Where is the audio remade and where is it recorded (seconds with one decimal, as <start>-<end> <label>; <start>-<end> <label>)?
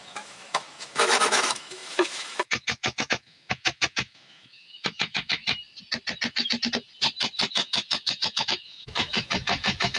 0.0-5.4 remade; 5.4-7.5 recorded; 7.5-10.0 remade